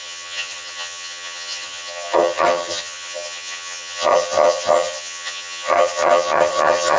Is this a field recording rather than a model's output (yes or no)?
no